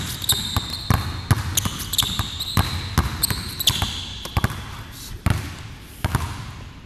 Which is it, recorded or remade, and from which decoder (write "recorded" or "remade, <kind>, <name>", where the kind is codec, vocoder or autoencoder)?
recorded